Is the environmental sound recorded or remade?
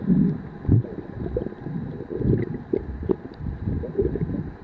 recorded